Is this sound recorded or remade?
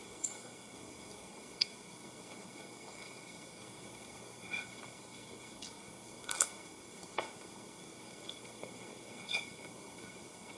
remade